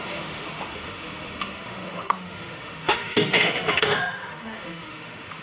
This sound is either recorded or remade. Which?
remade